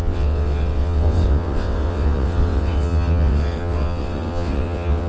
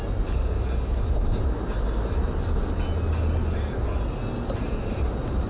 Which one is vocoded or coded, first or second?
first